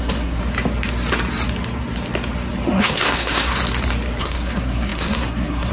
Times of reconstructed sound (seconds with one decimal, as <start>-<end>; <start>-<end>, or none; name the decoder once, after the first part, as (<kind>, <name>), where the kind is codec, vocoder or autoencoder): 0.0-0.4 (codec, SNAC); 2.8-3.6; 4.2-5.7